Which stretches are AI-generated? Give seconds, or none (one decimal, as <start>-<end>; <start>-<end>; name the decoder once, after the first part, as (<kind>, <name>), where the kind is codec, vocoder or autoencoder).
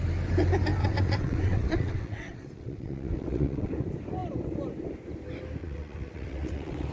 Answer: 0.8-3.7 (vocoder, WaveNeXt); 5.6-6.9